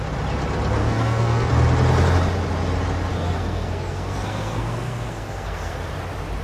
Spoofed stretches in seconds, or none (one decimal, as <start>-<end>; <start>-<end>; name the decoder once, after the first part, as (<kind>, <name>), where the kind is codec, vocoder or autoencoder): 0.8-1.5 (codec, SNAC); 3.1-5.9